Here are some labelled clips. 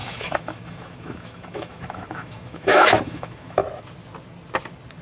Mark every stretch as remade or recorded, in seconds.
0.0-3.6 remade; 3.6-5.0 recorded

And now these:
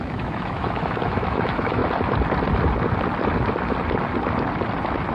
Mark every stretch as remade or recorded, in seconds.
0.0-1.8 remade; 1.8-5.1 recorded